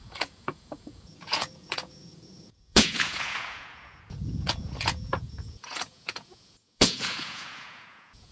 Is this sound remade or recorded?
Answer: remade